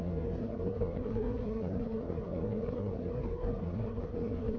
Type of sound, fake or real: fake